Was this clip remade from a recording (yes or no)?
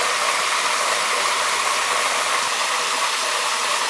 no